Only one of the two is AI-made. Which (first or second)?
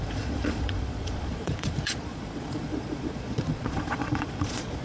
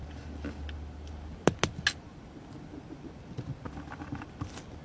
first